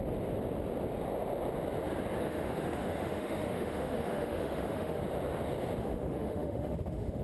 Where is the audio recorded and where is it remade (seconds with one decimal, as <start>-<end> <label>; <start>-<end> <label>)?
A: 0.0-2.2 recorded; 2.2-5.0 remade; 5.0-5.8 recorded; 5.8-7.2 remade